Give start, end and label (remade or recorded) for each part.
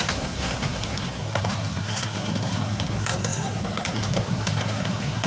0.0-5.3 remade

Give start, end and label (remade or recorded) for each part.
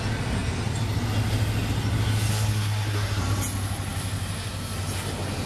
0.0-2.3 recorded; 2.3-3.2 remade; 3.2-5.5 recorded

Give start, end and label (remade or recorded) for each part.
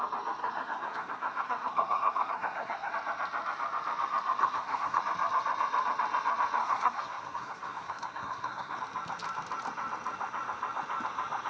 0.0-0.4 recorded; 0.4-2.9 remade; 2.9-4.4 recorded; 4.4-5.0 remade; 5.0-6.6 recorded; 6.6-8.8 remade; 8.8-11.5 recorded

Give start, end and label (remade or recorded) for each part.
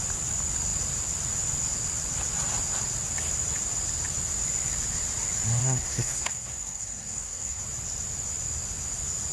0.0-5.6 recorded; 5.6-7.6 remade; 7.6-9.3 recorded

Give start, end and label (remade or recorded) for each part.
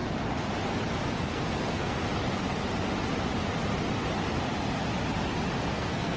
0.0-1.2 recorded; 1.2-2.0 remade; 2.0-5.7 recorded; 5.7-6.2 remade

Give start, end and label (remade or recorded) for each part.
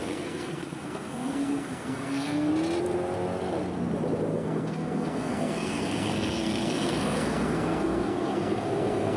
0.0-2.5 remade; 2.5-4.3 recorded; 4.3-9.2 remade